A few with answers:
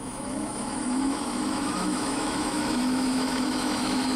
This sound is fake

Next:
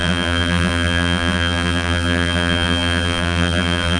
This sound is fake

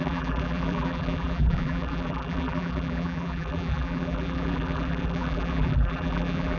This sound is fake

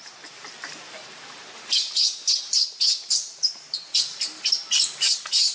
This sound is real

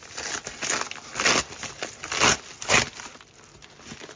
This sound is real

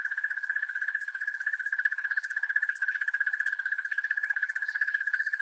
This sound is fake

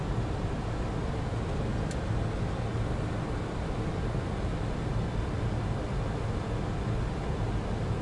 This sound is real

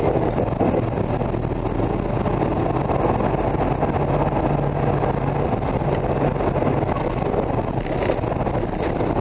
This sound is real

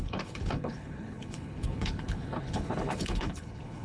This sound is fake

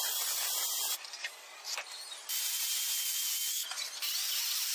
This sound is real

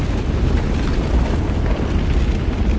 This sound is real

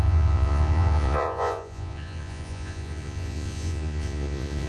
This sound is fake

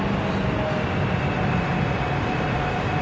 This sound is real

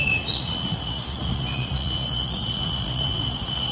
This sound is fake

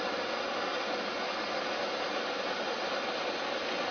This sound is real